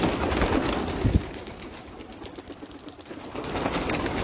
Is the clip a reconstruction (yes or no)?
no